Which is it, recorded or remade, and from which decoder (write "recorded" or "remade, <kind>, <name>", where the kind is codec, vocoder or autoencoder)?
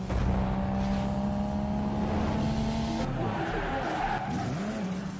recorded